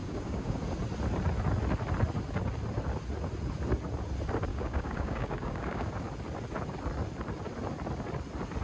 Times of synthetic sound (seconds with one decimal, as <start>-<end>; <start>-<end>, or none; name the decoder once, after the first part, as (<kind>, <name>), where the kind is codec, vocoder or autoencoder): 0.0-0.6 (codec, DAC); 4.5-5.9